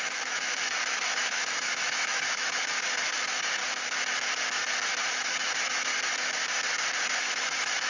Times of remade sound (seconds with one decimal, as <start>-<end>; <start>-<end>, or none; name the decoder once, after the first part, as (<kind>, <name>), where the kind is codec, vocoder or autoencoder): 0.0-3.6 (autoencoder, DAC-VAE); 5.1-5.9; 7.2-7.9